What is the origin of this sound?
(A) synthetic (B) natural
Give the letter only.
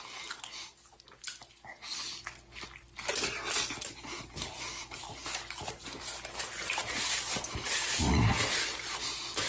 B